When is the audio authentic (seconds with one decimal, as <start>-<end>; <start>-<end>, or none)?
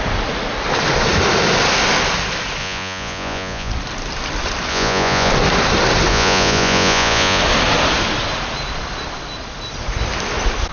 0.0-2.6; 3.7-4.7; 5.3-6.1; 7.4-10.7